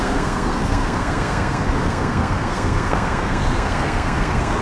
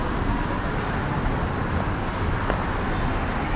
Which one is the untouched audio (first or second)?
second